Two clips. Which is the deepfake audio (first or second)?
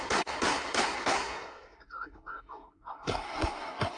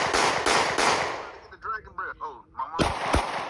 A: first